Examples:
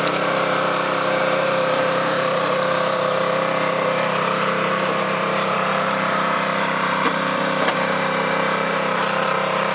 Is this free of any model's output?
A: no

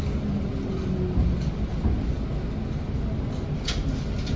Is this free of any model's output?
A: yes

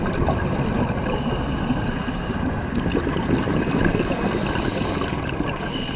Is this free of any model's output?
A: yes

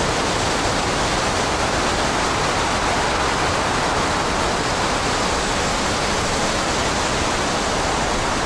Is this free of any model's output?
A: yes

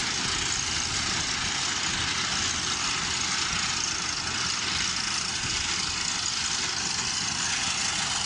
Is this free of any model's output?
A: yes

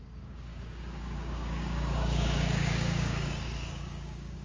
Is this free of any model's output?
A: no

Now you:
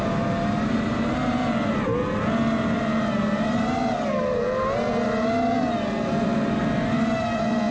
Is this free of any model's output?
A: yes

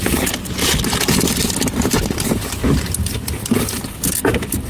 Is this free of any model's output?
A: yes